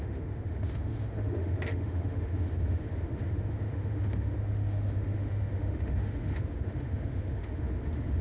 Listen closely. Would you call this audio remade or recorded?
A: remade